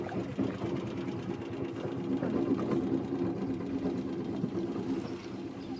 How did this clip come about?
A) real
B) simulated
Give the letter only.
A